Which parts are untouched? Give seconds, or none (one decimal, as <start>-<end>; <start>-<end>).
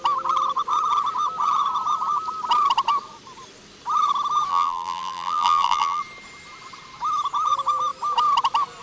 0.0-4.5; 6.0-8.8